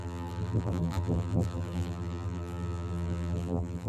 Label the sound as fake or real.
fake